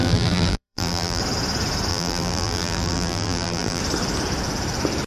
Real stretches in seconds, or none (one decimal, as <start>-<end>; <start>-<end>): 1.2-1.9; 3.8-5.1